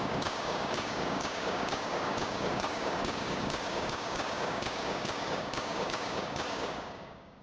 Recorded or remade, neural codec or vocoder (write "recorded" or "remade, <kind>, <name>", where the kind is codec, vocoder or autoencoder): remade, codec, DAC